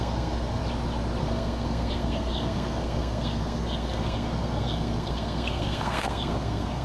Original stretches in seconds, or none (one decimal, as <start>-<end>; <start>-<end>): 0.6-1.2